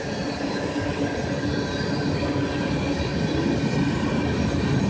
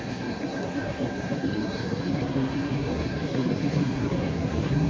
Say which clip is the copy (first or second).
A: second